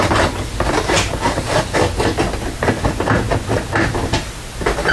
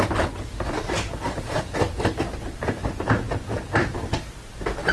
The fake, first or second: second